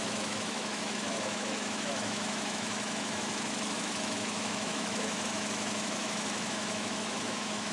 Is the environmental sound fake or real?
fake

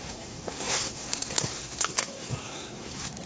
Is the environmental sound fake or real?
fake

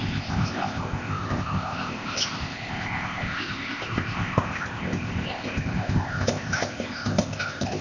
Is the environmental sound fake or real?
fake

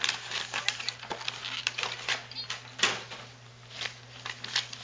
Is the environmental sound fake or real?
real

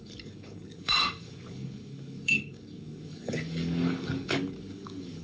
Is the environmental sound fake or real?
fake